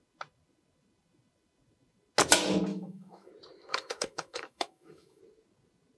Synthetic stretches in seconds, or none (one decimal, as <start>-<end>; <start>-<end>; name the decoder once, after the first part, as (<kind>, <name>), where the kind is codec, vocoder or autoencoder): 2.7-3.3 (autoencoder, DAC-VAE); 3.7-5.2